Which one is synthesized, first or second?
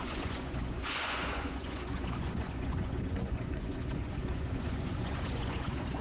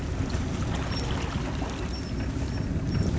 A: first